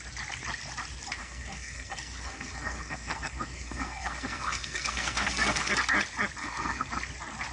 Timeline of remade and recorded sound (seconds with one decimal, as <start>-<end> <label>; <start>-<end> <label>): 0.0-1.2 recorded; 1.2-5.7 remade; 5.7-6.4 recorded; 6.4-6.9 remade; 6.9-7.5 recorded